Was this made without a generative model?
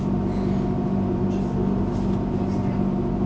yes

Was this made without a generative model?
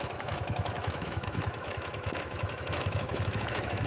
no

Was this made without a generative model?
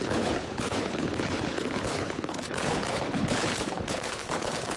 no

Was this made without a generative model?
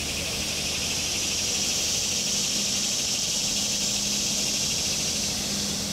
yes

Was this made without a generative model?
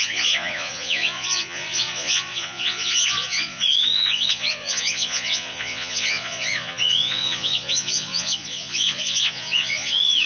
no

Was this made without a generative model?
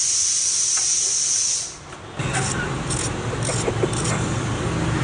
yes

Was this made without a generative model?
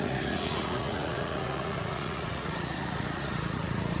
no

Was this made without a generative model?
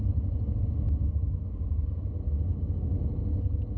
yes